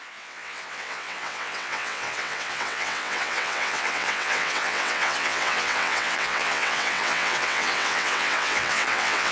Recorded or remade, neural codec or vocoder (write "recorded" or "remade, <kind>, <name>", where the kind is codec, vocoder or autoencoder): remade, vocoder, WaveNeXt